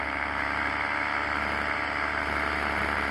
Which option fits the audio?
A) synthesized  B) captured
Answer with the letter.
B